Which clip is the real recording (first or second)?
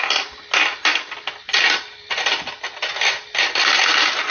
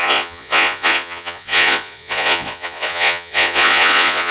first